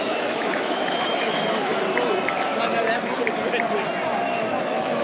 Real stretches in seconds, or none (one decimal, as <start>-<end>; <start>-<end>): 1.7-4.6